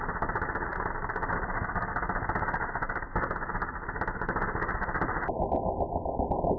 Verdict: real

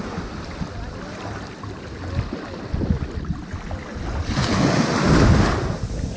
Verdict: real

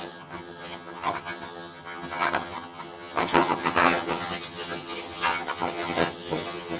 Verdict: fake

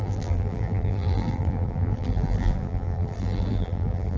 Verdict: fake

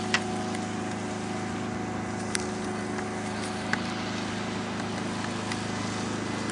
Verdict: real